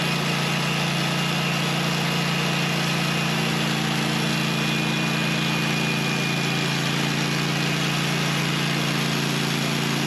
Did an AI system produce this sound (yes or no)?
no